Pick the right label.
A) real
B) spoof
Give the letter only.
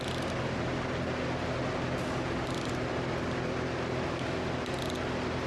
A